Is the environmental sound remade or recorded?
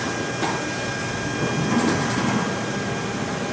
recorded